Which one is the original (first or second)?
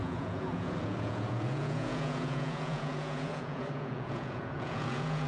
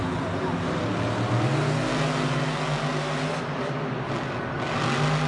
second